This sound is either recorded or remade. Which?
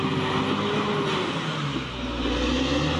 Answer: recorded